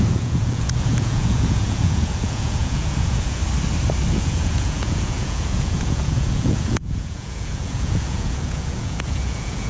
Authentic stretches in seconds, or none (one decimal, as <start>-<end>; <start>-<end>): 3.4-4.1